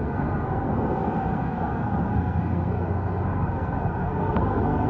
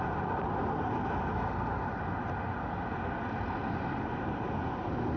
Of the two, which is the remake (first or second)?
first